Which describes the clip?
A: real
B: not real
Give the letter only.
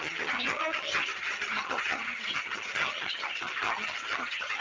B